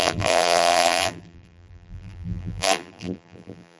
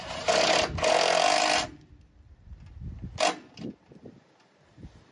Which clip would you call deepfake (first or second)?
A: first